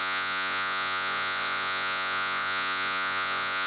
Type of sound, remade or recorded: remade